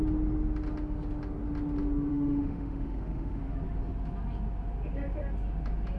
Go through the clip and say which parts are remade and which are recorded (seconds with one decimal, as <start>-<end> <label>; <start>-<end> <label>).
0.0-2.1 recorded; 2.1-3.4 remade; 3.4-6.0 recorded